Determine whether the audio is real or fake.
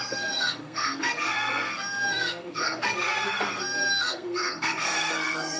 fake